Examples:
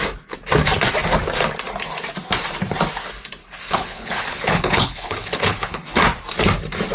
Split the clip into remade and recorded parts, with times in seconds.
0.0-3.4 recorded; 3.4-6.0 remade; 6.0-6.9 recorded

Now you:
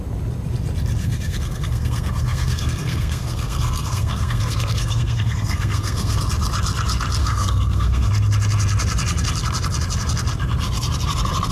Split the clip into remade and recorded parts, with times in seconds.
0.0-1.0 recorded; 1.0-6.2 remade; 6.2-7.2 recorded; 7.2-8.1 remade; 8.1-11.5 recorded

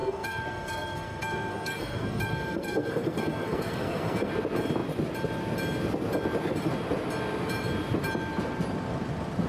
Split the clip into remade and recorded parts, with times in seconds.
0.0-4.3 remade; 4.3-9.5 recorded

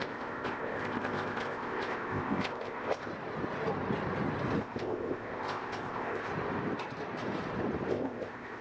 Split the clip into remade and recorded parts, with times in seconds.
0.0-3.1 remade; 3.1-4.6 recorded; 4.6-6.3 remade; 6.3-7.9 recorded; 7.9-8.6 remade

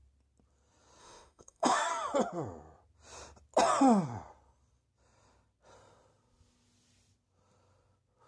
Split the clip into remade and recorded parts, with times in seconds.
0.0-1.0 recorded; 1.0-1.9 remade; 1.9-8.3 recorded